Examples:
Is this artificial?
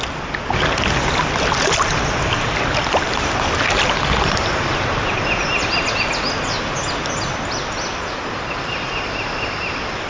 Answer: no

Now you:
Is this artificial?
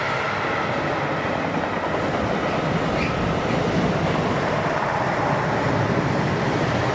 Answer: no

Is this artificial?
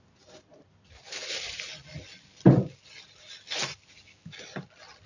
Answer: no